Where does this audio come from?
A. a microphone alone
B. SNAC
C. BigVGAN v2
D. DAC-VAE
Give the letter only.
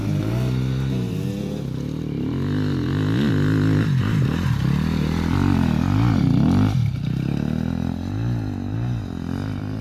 A